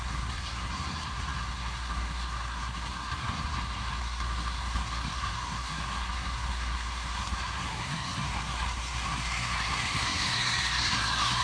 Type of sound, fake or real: fake